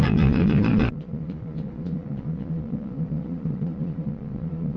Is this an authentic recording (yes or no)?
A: no